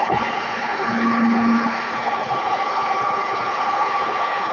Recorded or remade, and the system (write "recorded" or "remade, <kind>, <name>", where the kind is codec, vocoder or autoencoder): remade, codec, HILCodec